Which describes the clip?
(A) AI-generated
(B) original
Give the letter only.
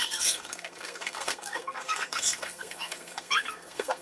A